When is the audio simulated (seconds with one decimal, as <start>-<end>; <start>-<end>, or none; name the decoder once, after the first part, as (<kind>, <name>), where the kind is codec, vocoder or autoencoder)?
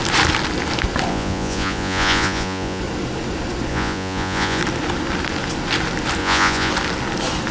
1.1-2.8 (vocoder, Vocos); 3.7-4.6; 6.2-6.7